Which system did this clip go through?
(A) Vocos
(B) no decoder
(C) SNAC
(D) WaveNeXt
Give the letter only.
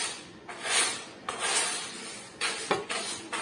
A